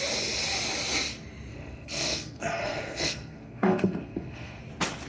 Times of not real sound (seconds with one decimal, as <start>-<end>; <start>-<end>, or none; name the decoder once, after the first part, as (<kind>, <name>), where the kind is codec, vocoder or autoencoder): 1.5-4.6 (codec, SNAC)